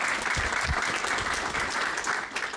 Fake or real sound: real